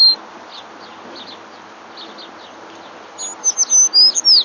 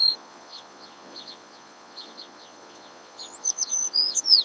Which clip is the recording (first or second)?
first